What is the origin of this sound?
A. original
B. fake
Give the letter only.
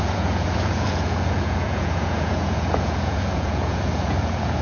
B